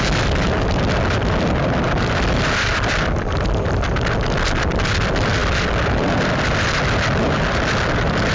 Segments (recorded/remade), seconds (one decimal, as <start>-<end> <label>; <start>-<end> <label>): 0.0-8.3 remade